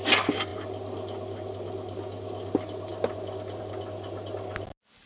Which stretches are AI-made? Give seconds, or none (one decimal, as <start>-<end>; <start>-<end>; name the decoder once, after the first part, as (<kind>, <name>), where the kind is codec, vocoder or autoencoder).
none

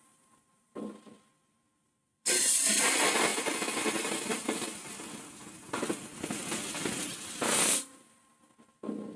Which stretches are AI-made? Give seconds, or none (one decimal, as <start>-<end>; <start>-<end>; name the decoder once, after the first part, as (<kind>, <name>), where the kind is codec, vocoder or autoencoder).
none

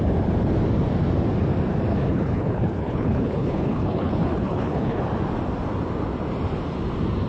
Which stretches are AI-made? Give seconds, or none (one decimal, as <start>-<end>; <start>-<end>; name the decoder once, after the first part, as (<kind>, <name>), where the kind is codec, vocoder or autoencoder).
1.9-5.0 (codec, HILCodec)

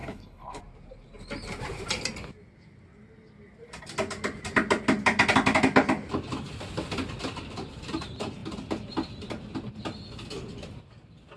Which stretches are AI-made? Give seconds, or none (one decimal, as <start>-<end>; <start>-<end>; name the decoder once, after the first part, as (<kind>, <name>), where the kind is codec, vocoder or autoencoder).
0.0-0.6 (codec, HILCodec)

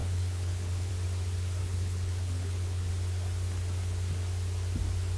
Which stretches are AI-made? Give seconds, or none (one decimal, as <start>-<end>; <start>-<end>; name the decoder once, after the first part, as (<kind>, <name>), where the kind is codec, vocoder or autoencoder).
0.0-0.9 (codec, HILCodec); 1.6-2.9

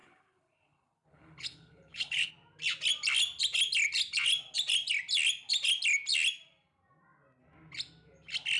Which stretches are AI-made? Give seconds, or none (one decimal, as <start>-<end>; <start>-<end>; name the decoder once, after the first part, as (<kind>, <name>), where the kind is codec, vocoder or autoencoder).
0.0-2.3 (codec, HILCodec)

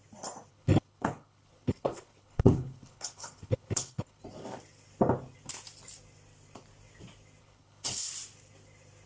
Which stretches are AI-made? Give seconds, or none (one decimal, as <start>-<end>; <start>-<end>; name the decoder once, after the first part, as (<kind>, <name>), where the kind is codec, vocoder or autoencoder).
0.5-4.2 (codec, HILCodec); 7.4-8.1

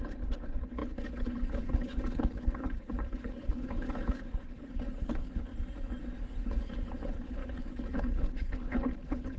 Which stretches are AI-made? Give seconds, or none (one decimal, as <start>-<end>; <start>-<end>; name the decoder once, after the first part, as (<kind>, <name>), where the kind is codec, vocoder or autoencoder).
0.0-5.5 (codec, HILCodec); 6.2-9.4